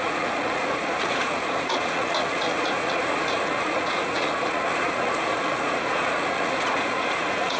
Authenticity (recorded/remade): remade